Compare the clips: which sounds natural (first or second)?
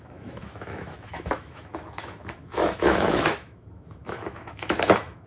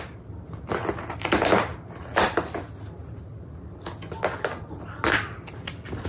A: second